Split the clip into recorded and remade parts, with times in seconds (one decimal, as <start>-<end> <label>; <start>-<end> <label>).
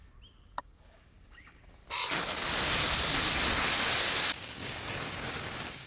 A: 0.0-0.6 recorded; 0.6-1.8 remade; 1.8-4.2 recorded; 4.2-5.9 remade